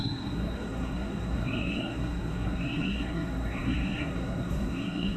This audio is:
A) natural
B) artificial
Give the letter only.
B